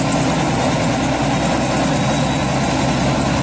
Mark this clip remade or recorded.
recorded